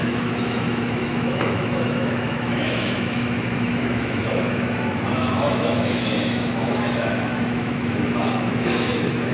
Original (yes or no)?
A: no